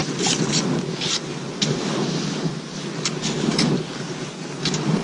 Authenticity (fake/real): real